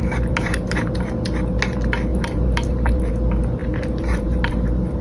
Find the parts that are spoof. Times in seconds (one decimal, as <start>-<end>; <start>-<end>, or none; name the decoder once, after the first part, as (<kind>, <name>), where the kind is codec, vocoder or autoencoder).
0.0-0.9 (vocoder, BigVGAN v2); 2.1-3.1; 3.6-5.0